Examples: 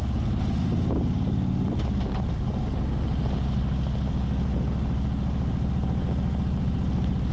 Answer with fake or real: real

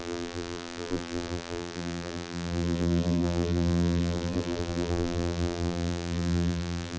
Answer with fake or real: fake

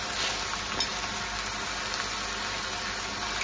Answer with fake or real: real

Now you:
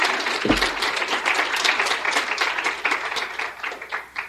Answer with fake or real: fake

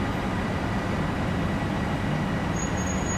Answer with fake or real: real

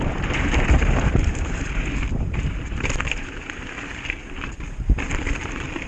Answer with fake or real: fake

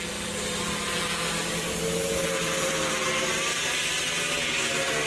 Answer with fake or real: real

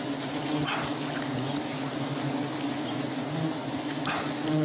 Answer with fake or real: real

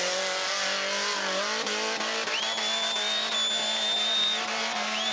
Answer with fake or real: real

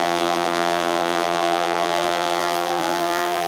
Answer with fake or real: fake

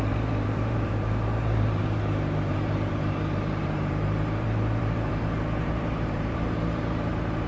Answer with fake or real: fake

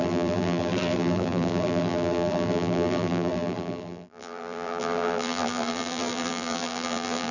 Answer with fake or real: fake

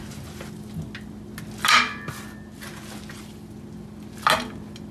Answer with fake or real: real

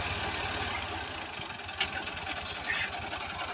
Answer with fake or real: real